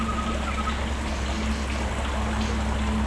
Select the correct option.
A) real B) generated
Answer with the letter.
A